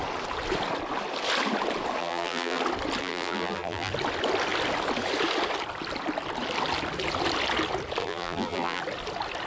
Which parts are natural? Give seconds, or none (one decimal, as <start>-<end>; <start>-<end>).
0.0-2.0; 2.6-3.0; 3.9-8.0; 8.8-9.5